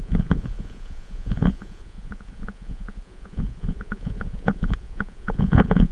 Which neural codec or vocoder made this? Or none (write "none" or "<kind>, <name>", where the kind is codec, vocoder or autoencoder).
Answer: vocoder, Vocos